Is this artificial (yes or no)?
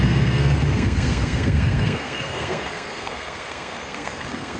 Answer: yes